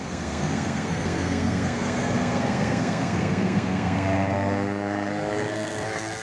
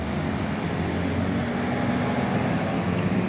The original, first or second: second